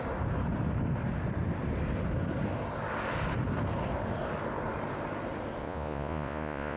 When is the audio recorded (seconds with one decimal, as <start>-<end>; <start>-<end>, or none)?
0.0-5.6